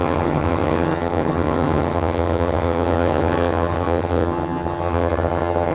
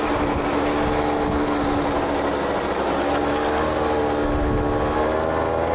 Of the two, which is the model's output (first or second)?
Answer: first